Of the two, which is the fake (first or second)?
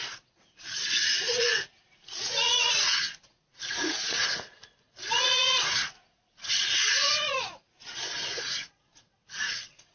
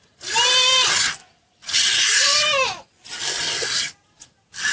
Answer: first